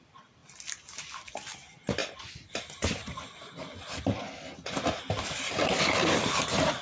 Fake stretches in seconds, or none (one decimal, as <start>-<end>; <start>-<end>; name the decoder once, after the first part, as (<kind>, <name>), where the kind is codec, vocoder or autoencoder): none

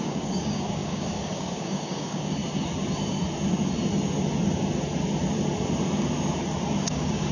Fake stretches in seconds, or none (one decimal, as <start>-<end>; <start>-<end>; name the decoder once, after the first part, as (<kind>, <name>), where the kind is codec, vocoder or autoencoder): 0.0-2.4 (codec, DAC); 6.8-7.3

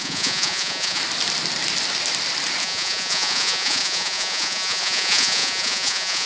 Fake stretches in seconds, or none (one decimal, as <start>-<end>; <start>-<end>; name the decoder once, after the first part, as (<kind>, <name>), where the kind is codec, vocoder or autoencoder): 0.0-1.0 (vocoder, Vocos); 2.6-6.3

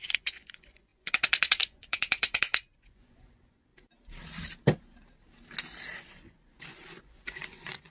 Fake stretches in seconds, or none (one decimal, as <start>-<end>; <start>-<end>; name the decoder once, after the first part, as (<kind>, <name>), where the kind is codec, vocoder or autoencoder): 0.0-3.7 (vocoder, Vocos); 6.0-7.9